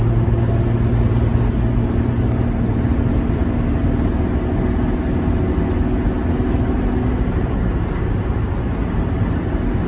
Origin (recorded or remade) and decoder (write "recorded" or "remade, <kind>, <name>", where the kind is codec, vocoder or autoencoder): recorded